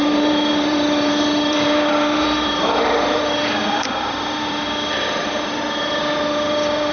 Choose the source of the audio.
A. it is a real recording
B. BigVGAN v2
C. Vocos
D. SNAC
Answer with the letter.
B